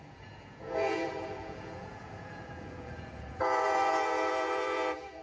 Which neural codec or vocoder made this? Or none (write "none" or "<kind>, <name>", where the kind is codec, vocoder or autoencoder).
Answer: vocoder, Vocos